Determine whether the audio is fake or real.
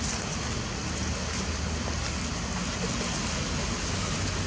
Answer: real